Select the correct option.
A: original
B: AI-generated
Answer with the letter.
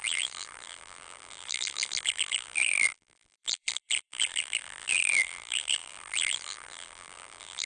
B